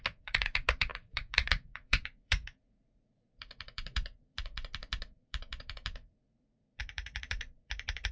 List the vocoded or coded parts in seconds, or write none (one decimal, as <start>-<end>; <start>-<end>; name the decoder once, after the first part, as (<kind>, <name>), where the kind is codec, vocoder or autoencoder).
0.0-8.1 (vocoder, Vocos)